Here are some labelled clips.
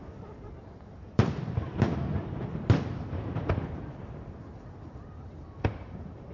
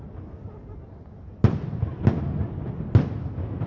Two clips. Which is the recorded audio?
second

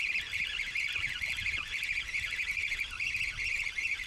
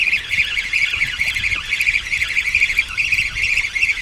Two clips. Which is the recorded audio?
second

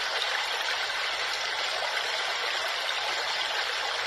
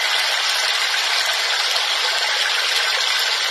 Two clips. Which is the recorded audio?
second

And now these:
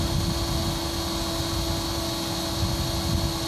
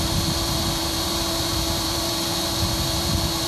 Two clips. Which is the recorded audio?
first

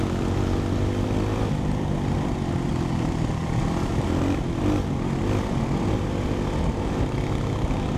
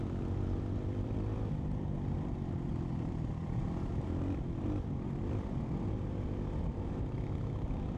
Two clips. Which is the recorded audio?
first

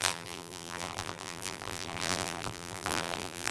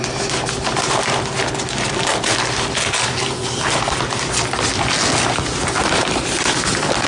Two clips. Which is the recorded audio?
second